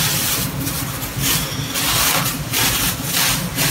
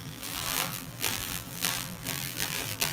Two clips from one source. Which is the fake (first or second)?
second